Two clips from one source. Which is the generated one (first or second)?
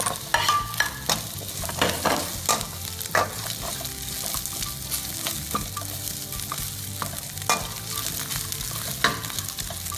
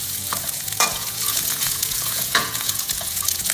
second